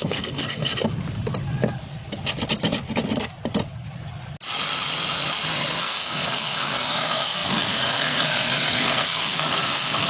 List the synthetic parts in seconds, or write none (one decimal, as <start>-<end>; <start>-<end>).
0.0-0.7; 5.8-10.1